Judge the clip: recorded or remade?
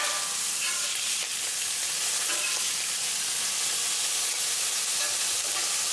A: recorded